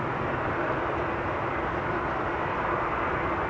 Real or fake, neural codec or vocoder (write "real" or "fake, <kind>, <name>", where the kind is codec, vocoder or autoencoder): real